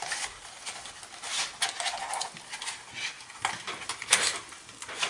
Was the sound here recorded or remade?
recorded